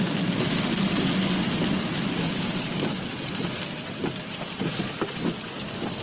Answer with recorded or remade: recorded